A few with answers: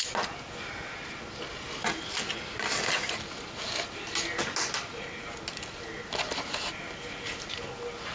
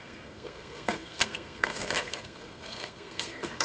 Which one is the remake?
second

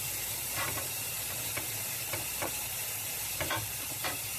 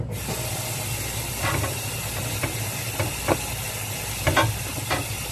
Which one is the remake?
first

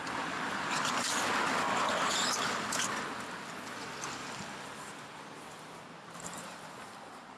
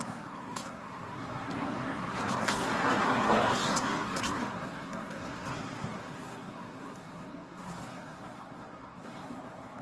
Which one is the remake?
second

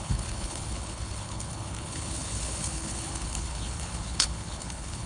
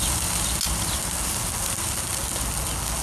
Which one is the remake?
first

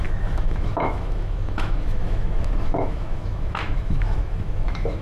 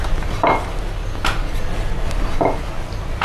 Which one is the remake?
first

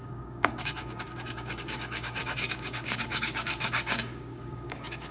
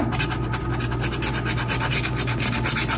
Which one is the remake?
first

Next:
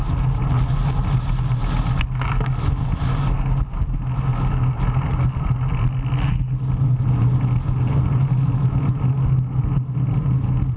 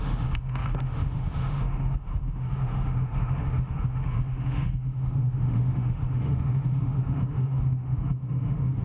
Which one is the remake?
second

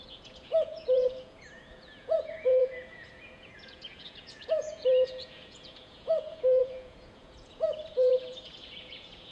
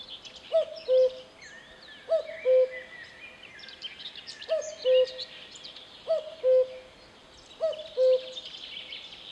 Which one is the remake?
first